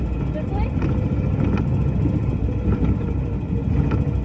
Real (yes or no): yes